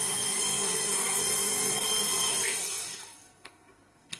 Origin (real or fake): fake